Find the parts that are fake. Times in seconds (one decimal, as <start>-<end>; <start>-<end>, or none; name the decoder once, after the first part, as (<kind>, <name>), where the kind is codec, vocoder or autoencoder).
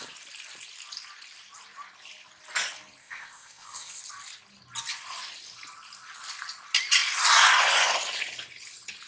3.0-4.0 (codec, ZipCodec)